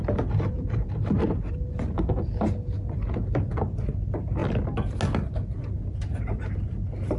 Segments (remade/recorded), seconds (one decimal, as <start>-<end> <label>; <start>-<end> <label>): 0.0-7.2 recorded